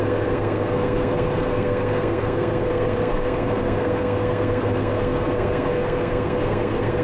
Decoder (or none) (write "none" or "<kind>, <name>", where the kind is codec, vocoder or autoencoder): codec, SNAC